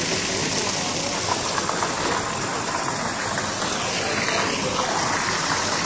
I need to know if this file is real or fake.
real